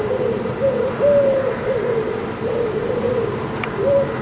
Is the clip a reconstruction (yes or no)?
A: no